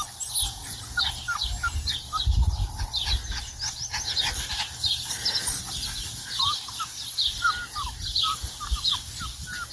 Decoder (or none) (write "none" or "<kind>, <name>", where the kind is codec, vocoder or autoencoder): none